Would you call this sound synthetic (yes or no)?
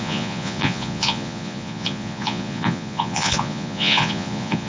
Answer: yes